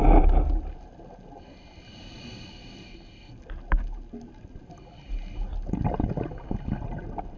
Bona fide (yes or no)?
yes